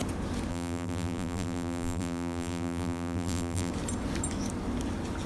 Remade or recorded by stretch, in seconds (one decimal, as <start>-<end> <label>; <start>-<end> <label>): 0.0-0.5 recorded; 0.5-3.7 remade; 3.7-5.3 recorded